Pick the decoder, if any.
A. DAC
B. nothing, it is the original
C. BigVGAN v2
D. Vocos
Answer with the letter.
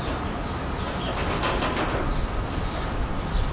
B